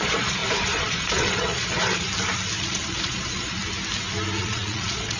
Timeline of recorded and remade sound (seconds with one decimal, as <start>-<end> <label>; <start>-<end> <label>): 0.0-2.1 remade; 2.1-2.6 recorded; 2.6-3.6 remade; 3.6-4.4 recorded; 4.4-5.2 remade